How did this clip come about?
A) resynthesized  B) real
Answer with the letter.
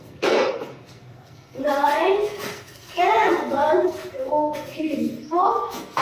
A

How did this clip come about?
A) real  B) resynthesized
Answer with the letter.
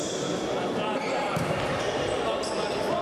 A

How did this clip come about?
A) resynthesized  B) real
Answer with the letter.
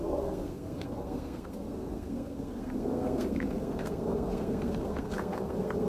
A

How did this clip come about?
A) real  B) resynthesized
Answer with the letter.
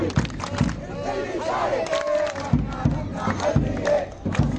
A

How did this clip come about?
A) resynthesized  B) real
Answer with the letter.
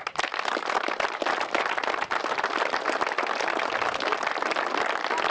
B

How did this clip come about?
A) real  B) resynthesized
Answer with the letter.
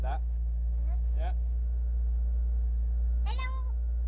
A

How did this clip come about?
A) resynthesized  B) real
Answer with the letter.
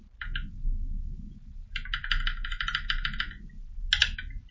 B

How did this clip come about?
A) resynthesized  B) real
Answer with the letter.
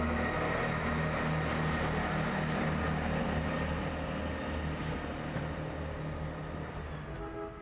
B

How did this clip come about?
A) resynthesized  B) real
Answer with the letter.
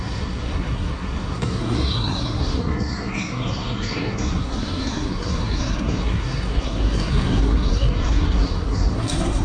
A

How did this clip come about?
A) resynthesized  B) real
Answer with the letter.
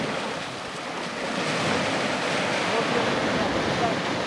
B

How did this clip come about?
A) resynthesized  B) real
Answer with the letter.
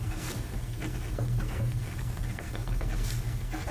A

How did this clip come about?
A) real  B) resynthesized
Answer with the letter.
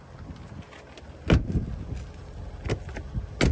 A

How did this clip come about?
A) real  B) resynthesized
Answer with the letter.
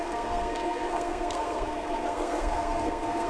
B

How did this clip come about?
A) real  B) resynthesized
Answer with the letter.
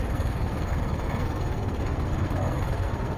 B